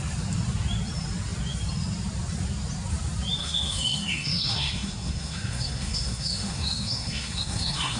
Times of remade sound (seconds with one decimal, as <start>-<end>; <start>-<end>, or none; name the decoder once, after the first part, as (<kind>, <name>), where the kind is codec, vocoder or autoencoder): 3.4-8.0 (codec, SNAC)